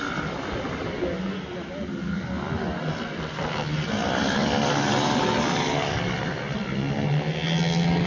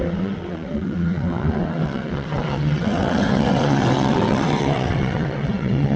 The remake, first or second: second